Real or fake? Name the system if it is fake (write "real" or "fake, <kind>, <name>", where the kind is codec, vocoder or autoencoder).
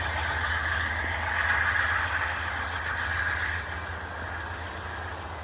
real